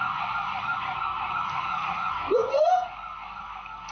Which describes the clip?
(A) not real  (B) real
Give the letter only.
A